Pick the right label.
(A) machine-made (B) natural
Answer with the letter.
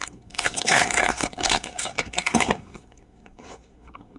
A